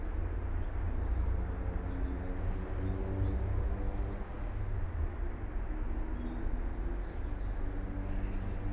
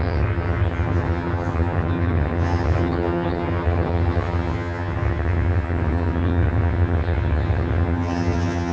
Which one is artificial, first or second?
second